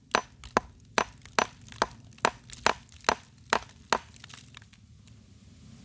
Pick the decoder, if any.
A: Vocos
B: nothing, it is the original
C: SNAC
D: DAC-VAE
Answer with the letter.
B